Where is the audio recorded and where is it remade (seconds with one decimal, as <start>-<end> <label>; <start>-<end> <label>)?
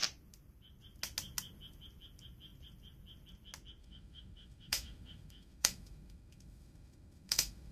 0.0-3.8 recorded; 3.8-7.7 remade